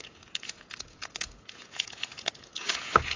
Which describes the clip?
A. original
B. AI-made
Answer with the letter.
B